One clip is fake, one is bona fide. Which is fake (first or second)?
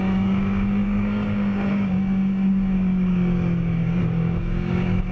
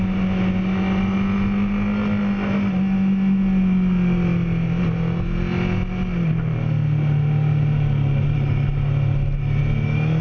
first